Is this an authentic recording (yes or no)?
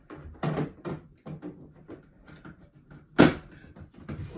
yes